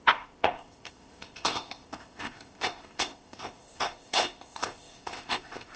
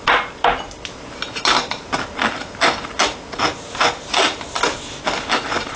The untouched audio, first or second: second